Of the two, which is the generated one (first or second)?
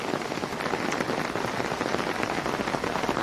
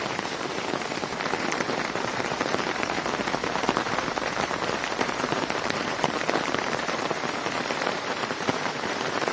second